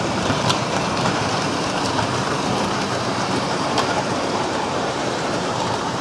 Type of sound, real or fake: fake